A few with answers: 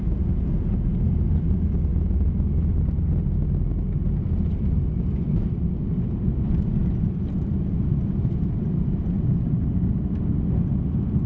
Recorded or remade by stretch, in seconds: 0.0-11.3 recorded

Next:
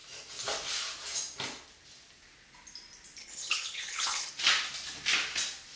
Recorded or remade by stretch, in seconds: 0.0-3.2 recorded; 3.2-4.3 remade; 4.3-5.8 recorded

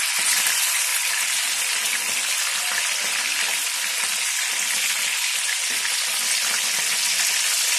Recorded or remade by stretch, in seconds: 0.0-0.9 recorded; 0.9-1.6 remade; 1.6-7.8 recorded

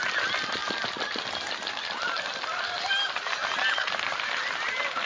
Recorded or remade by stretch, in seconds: 0.0-5.1 recorded

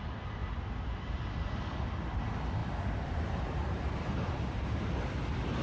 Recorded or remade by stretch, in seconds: 0.0-2.6 recorded; 2.6-5.0 remade; 5.0-5.6 recorded